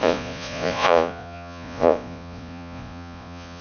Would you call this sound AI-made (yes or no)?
yes